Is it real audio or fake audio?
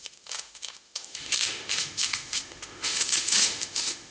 fake